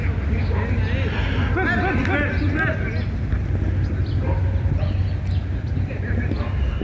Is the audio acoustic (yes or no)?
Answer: yes